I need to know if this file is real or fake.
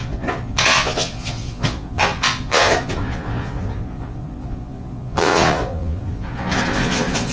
fake